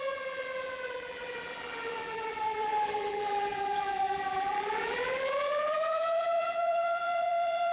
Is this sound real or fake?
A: fake